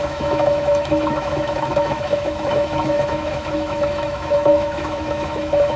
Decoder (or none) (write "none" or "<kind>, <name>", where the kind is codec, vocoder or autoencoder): autoencoder, DAC-VAE